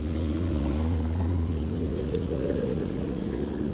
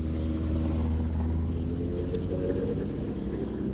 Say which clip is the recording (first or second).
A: second